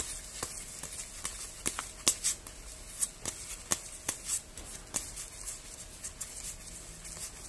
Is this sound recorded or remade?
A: recorded